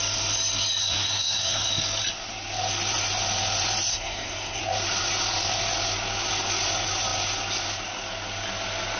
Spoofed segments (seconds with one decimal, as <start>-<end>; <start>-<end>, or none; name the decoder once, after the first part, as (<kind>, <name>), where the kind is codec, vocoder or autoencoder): 0.8-1.7 (codec, SNAC); 3.9-4.6